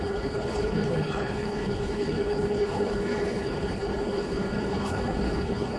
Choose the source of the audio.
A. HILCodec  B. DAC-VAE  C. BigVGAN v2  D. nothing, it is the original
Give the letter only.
A